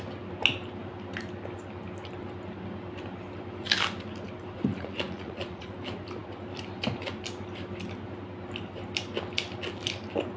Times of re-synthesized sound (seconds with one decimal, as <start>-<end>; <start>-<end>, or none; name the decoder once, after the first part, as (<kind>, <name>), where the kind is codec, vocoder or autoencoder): 4.7-5.7 (vocoder, Vocos)

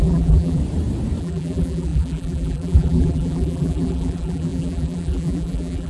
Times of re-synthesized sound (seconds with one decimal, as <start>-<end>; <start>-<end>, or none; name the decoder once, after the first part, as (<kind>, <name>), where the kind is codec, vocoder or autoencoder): 0.0-0.6 (vocoder, BigVGAN v2); 1.2-5.9

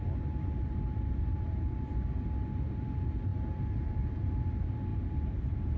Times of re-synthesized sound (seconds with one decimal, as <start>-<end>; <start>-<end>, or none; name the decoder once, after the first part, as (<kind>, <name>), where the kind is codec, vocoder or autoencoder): 1.3-1.9 (vocoder, BigVGAN v2); 3.3-3.9; 4.9-5.8

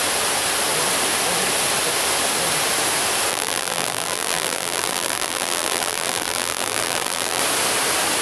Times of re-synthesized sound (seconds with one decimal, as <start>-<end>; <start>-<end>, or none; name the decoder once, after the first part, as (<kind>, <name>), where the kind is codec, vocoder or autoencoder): 3.3-7.4 (vocoder, BigVGAN v2)